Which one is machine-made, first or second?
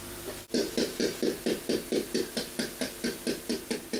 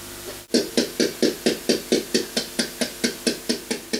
first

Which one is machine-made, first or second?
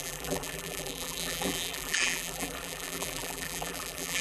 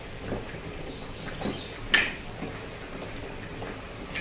first